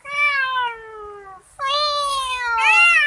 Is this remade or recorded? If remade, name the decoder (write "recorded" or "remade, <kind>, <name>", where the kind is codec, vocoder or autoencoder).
recorded